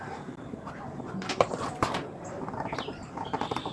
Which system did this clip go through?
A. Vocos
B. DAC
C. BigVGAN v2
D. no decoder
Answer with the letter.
C